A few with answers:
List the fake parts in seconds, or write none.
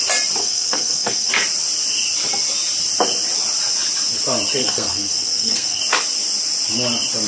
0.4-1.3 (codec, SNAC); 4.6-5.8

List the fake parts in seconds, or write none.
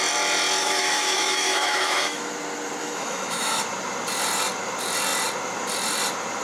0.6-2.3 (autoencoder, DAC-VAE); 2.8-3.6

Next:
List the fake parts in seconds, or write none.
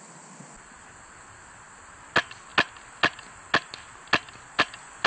none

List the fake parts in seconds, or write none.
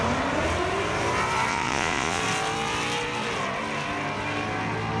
1.5-2.2 (vocoder, Vocos)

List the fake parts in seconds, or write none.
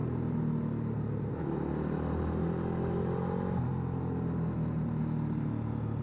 none